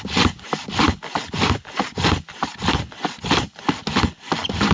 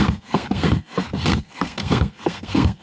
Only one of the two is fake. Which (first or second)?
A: second